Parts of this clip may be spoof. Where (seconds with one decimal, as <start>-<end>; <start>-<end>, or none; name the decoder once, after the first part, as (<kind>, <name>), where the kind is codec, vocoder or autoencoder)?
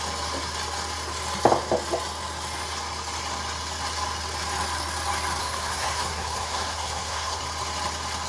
5.4-7.4 (codec, SNAC)